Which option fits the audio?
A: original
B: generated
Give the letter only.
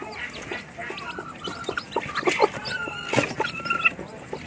A